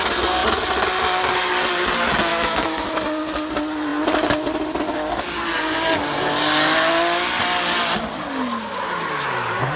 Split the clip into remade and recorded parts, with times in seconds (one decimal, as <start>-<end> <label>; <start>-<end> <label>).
0.0-2.3 recorded; 2.3-2.9 remade; 2.9-9.8 recorded

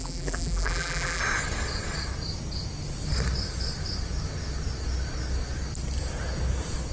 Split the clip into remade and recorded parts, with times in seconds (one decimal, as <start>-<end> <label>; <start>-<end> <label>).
0.0-1.2 remade; 1.2-6.9 recorded

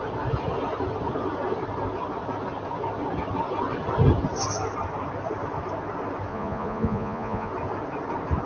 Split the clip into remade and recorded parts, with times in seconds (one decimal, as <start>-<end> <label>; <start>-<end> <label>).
0.0-6.3 recorded; 6.3-7.5 remade; 7.5-8.5 recorded

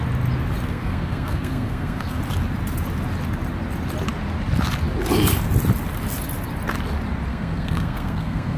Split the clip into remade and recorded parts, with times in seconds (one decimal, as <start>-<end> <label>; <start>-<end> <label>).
0.0-0.7 recorded; 0.7-2.2 remade; 2.2-7.3 recorded; 7.3-8.6 remade

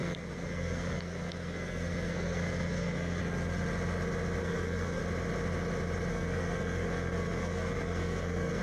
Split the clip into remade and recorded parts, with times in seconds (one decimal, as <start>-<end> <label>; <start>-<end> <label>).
0.0-3.2 remade; 3.2-4.4 recorded; 4.4-5.0 remade; 5.0-6.1 recorded; 6.1-8.6 remade